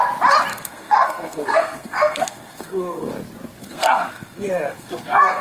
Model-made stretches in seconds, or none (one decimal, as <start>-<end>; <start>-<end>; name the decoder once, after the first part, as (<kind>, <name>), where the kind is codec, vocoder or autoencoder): 0.5-3.1 (codec, SNAC); 3.6-5.4